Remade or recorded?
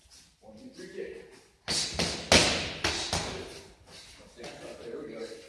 recorded